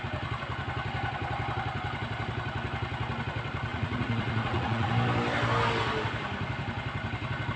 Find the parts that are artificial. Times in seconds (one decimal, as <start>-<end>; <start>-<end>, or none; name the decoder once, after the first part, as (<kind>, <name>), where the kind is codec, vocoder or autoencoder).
3.7-4.9 (vocoder, Vocos)